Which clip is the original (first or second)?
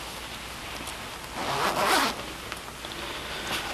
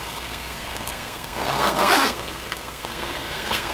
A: first